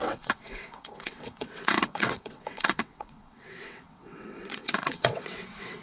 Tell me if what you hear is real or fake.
fake